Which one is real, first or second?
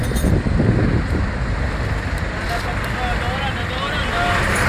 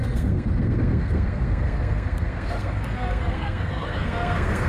first